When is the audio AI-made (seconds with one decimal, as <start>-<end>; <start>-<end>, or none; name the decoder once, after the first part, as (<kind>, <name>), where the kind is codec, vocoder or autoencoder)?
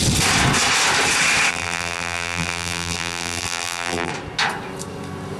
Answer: 1.5-4.1 (vocoder, BigVGAN v2)